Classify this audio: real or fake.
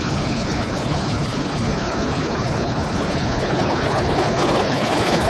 fake